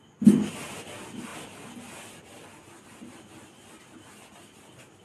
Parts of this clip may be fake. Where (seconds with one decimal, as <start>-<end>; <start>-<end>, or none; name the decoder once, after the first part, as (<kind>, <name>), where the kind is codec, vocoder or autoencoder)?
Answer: none